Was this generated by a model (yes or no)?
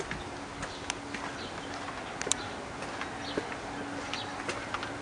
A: no